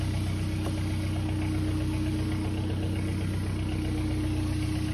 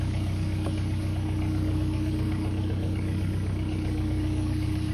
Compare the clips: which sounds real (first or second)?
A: first